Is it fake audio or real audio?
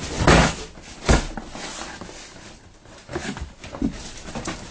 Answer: real